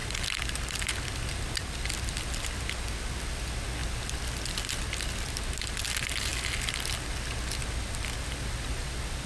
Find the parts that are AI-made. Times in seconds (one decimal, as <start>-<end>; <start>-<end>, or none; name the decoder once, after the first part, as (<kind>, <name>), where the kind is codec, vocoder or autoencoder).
none